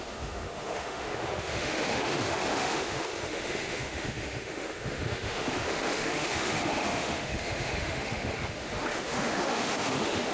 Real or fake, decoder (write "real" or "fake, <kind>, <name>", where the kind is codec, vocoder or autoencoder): fake, autoencoder, DAC-VAE